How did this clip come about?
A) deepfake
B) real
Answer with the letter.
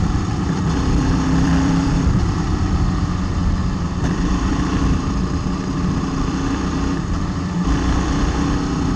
A